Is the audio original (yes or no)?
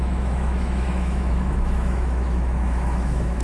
no